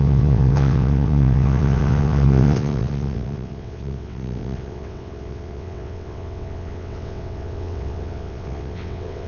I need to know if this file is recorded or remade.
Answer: remade